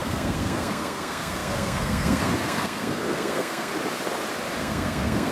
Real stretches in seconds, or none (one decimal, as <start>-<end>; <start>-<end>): 3.7-4.6